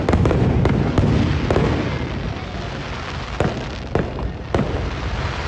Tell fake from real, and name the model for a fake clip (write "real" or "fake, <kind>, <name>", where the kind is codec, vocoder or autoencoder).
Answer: real